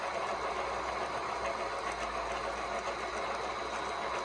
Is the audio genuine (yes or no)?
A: yes